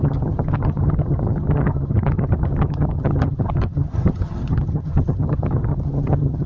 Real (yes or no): no